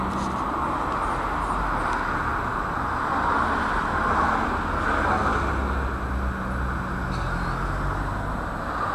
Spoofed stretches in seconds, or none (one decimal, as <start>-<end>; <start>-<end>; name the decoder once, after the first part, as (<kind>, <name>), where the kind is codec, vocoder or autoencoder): none

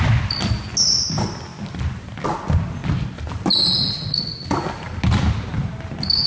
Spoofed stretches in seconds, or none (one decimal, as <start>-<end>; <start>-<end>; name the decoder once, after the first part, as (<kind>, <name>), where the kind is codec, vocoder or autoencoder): none

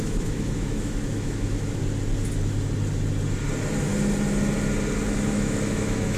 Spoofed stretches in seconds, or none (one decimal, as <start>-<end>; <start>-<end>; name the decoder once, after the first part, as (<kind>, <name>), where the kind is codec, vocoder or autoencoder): 0.0-1.8 (autoencoder, DAC-VAE); 5.3-6.2